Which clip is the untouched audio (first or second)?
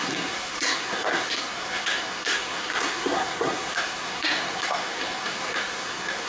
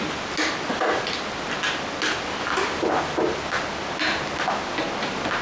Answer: second